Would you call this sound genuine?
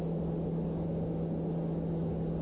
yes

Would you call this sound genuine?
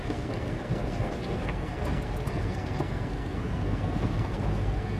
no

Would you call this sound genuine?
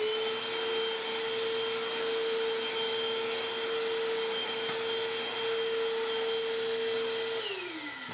yes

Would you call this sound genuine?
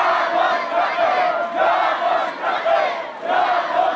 yes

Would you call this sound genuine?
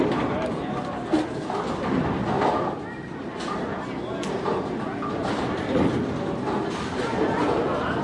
yes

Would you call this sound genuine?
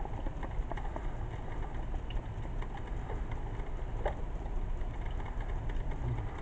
yes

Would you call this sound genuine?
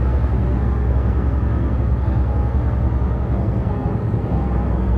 no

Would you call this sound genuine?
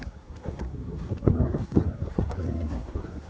no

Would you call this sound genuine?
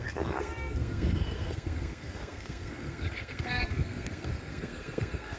no